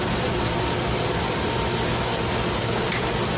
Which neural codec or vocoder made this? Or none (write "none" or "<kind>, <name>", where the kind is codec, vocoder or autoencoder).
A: none